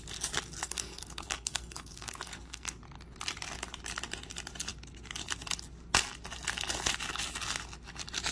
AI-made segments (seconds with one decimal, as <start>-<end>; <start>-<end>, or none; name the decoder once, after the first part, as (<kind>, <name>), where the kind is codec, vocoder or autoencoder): 0.6-2.8 (codec, SNAC)